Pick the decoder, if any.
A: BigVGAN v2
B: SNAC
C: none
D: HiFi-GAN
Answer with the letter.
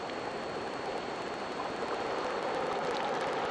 C